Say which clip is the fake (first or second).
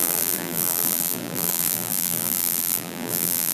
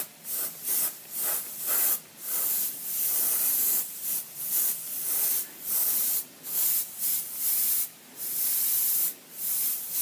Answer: first